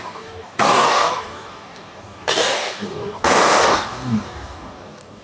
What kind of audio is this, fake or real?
fake